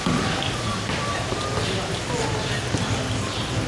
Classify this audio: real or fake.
real